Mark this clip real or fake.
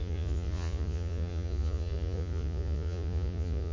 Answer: fake